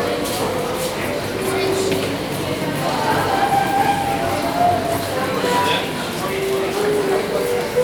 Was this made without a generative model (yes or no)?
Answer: yes